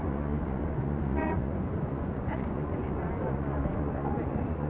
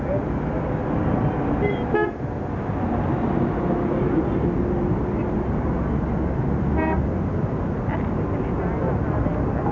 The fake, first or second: first